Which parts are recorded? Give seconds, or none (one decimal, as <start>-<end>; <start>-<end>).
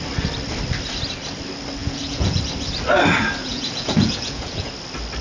0.0-1.8; 2.4-3.4; 4.7-5.2